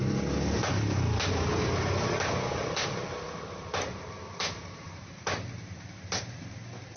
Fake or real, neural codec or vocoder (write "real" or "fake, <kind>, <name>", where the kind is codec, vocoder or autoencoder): real